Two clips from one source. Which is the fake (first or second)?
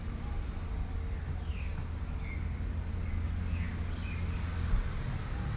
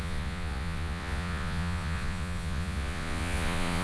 second